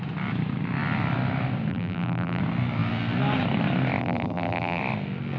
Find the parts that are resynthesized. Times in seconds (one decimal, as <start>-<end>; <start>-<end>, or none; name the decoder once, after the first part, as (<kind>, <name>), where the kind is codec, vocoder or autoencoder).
1.7-2.4 (vocoder, BigVGAN v2); 4.0-4.8